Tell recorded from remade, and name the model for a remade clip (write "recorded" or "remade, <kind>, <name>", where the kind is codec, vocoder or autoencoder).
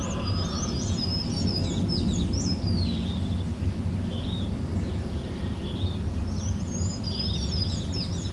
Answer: recorded